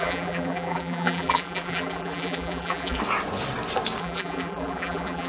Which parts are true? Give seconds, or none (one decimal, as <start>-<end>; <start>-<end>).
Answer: 3.0-4.0